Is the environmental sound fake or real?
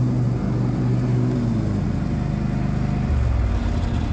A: real